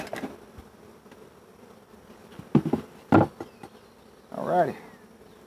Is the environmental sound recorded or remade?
recorded